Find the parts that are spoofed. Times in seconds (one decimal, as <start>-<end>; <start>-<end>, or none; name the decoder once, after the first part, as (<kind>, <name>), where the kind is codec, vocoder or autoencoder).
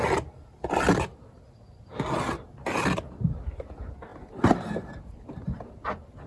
none